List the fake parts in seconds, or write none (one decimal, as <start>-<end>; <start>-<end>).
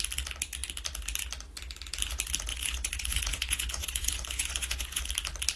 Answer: 2.5-5.1